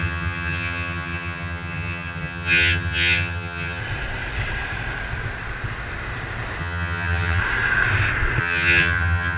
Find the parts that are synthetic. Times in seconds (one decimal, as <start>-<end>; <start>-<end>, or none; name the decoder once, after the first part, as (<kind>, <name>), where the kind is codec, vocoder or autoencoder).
0.0-3.8 (vocoder, HiFi-GAN); 6.6-7.4; 8.4-9.4